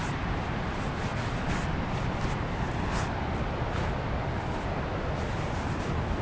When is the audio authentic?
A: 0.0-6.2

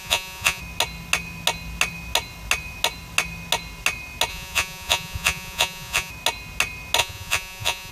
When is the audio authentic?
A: 0.6-4.3; 6.1-7.0

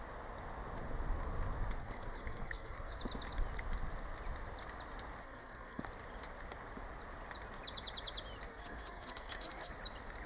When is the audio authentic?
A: 0.0-1.8; 3.0-5.2; 5.8-8.5; 9.7-10.3